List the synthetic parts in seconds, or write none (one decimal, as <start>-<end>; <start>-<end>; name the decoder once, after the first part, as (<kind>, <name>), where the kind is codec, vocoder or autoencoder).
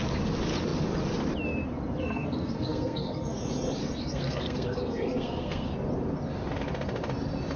2.0-3.4 (codec, SNAC); 3.8-5.7